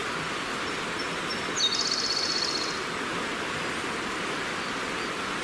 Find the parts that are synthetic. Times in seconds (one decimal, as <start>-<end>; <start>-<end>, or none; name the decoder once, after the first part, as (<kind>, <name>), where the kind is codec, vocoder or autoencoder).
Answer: none